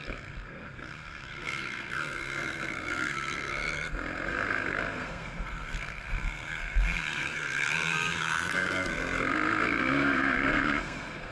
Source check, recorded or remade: remade